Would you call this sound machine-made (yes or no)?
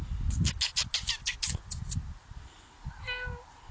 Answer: no